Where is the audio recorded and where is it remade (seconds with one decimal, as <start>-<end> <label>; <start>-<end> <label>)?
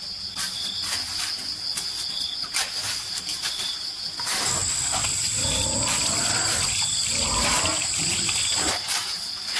0.0-9.6 recorded